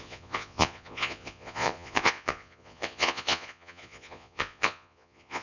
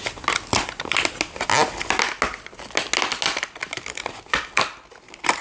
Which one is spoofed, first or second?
first